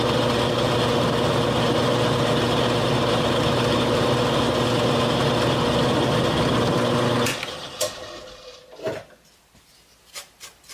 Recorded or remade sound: recorded